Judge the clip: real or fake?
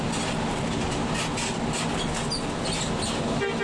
real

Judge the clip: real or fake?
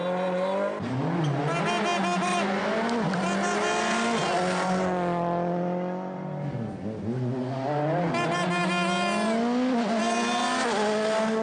real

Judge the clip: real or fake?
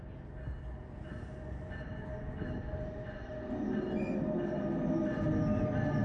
real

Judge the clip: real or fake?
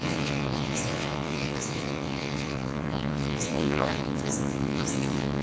fake